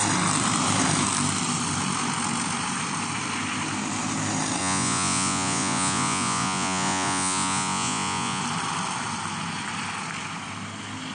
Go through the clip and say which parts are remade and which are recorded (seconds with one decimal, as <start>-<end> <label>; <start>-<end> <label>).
0.0-4.6 recorded; 4.6-8.4 remade; 8.4-11.1 recorded